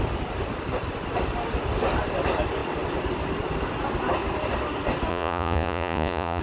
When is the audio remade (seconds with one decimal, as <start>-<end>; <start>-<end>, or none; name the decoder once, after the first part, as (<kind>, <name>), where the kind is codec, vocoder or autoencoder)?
5.1-6.4 (vocoder, Vocos)